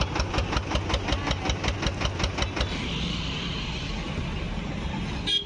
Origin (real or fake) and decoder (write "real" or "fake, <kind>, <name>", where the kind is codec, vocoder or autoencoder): real